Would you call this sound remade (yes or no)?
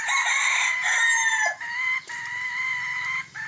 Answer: no